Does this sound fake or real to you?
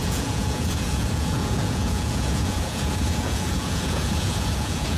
fake